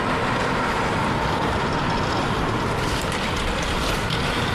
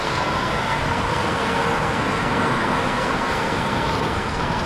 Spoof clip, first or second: second